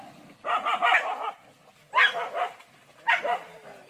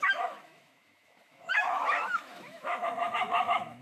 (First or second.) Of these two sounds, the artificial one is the second